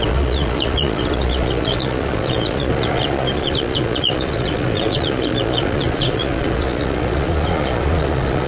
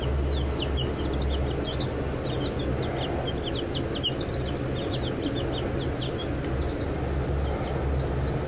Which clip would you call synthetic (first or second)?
first